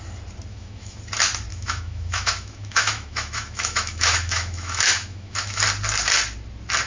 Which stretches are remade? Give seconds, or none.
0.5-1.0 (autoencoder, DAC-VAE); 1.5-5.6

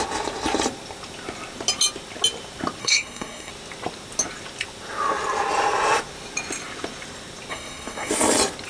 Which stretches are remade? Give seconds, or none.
2.8-3.5 (codec, SNAC); 7.5-8.1

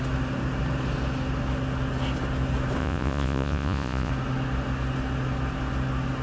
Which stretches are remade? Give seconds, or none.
2.8-4.1 (vocoder, Vocos)

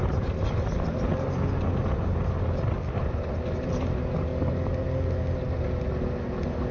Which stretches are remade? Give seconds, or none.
none

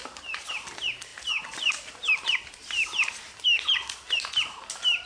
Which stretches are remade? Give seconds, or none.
none